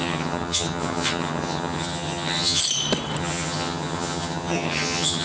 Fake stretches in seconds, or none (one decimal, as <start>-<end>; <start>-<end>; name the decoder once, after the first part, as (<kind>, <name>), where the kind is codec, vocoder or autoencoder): 0.0-2.6 (vocoder, HiFi-GAN); 3.2-5.2